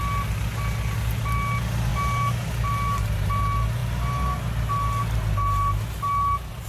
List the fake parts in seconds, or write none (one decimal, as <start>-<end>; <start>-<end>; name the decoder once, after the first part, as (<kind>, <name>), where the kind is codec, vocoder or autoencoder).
none